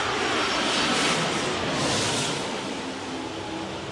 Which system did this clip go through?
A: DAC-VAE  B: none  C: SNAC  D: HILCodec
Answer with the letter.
B